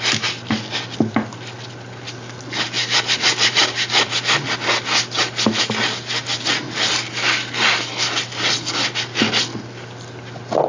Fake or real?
real